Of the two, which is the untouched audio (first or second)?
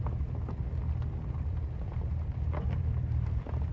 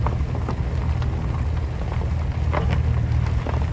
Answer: second